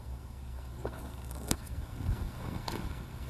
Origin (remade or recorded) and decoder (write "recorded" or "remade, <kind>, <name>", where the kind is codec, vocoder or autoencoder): remade, codec, SNAC